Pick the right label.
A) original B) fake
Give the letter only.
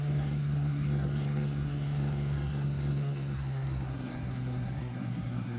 B